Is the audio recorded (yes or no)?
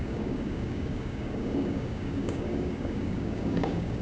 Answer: no